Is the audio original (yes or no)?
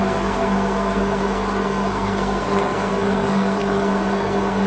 no